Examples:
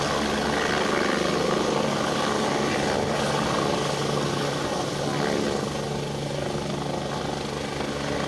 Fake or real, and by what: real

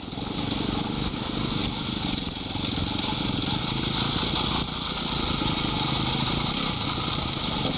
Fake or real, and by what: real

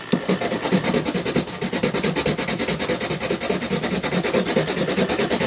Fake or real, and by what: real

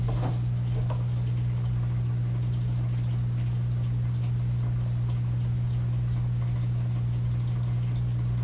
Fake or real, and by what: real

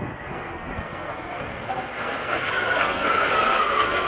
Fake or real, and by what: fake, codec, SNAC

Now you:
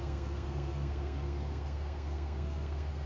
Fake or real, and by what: fake, codec, SNAC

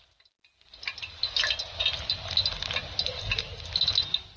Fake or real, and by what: real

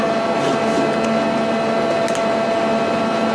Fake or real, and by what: real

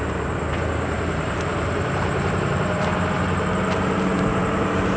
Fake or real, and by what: fake, vocoder, BigVGAN v2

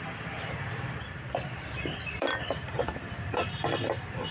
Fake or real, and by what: fake, vocoder, BigVGAN v2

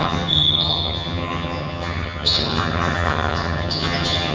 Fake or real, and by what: fake, vocoder, HiFi-GAN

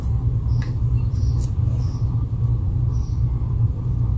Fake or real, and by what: real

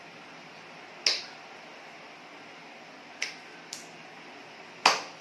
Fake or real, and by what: real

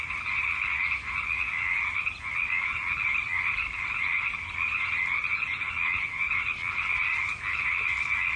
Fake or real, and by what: real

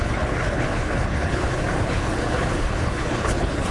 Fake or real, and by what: fake, codec, HILCodec